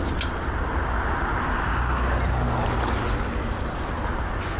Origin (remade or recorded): recorded